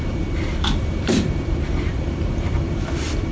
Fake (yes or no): yes